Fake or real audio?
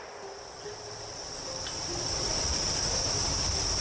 real